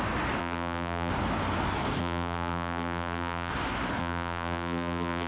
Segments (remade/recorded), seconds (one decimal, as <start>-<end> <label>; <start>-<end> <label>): 0.0-0.4 recorded; 0.4-1.1 remade; 1.1-2.0 recorded; 2.0-3.5 remade; 3.5-4.0 recorded; 4.0-5.3 remade